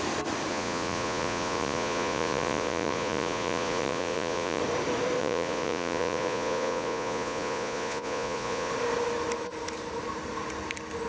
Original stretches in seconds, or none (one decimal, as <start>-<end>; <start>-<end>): 0.0-0.5; 4.6-5.2; 8.7-11.1